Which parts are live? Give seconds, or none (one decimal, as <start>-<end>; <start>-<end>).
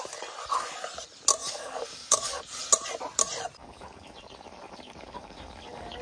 0.0-1.4; 2.4-3.6